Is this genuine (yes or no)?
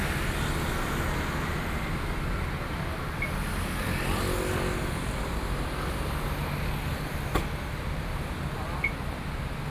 yes